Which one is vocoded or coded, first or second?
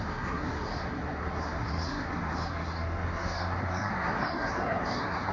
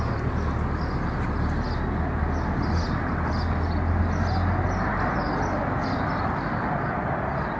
first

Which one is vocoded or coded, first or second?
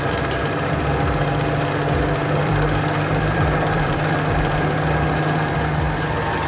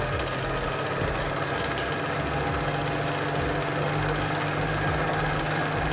first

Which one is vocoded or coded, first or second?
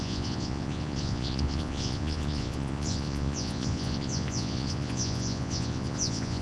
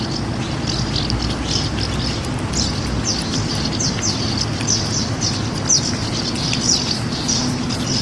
first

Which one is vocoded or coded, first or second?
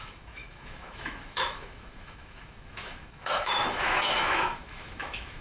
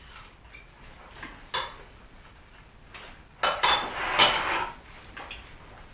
first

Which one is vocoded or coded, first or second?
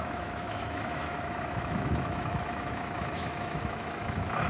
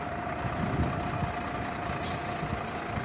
first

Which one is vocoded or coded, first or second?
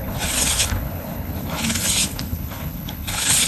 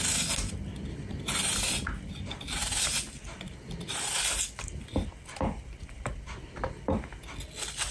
first